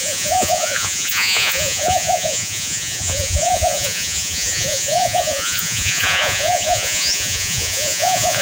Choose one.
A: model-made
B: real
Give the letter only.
A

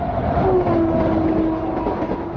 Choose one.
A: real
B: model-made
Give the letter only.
A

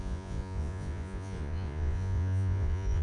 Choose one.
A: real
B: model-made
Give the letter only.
B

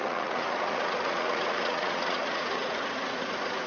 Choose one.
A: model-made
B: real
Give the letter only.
A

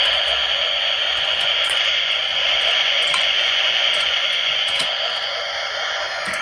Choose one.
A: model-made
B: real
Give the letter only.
A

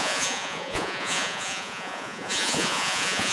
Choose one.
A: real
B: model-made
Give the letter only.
B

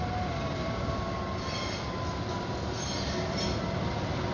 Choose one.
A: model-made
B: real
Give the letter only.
B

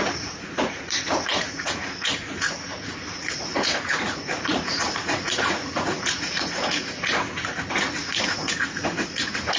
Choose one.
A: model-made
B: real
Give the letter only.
A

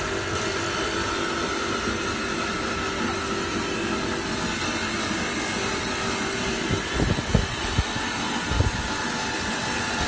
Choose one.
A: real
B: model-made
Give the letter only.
A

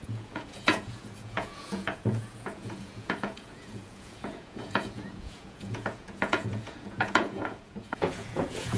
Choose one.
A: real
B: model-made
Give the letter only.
B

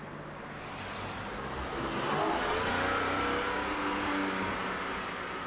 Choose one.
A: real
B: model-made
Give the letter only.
A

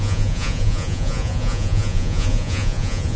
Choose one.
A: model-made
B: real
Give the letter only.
A